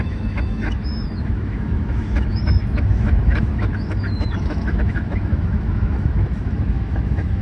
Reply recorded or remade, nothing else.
remade